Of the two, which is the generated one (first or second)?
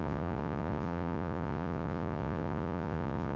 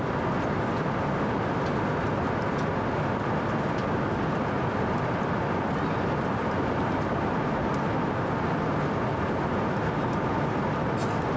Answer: first